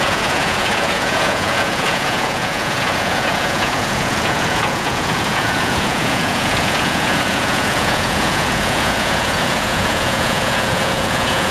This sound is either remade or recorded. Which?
remade